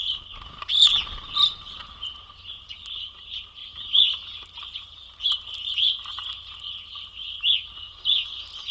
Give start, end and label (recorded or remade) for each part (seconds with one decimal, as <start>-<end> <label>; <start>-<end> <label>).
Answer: 0.0-3.6 recorded; 3.6-6.0 remade; 6.0-8.7 recorded